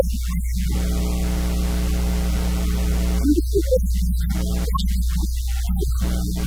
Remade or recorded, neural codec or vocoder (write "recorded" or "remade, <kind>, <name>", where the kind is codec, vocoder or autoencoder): recorded